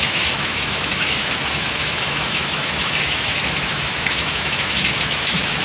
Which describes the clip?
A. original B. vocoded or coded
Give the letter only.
B